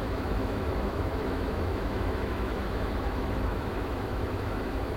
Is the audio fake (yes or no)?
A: yes